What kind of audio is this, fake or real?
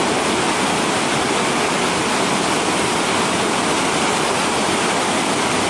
real